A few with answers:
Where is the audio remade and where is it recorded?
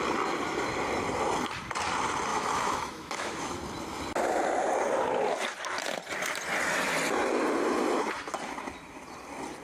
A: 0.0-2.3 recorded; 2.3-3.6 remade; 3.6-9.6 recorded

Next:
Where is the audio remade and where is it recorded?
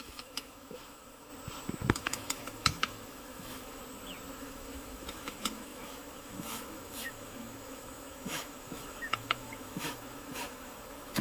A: 0.0-1.3 remade; 1.3-1.9 recorded; 1.9-3.8 remade; 3.8-4.4 recorded; 4.4-11.2 remade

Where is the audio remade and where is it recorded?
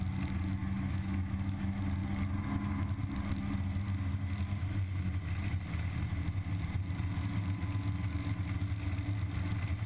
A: 0.0-0.6 recorded; 0.6-1.6 remade; 1.6-9.9 recorded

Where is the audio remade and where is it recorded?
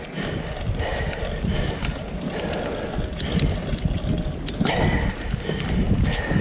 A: 0.0-6.4 recorded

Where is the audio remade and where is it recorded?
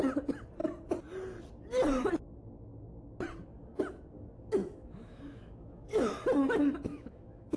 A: 0.0-4.6 recorded; 4.6-6.0 remade; 6.0-6.9 recorded; 6.9-7.6 remade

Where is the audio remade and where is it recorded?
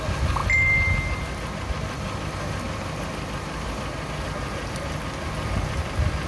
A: 0.0-6.3 recorded